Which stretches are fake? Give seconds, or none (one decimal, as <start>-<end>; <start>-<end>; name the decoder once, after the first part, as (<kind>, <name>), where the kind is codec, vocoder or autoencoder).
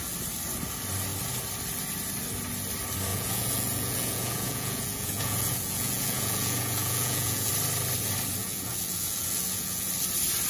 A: 3.1-7.5 (vocoder, Vocos); 8.4-9.9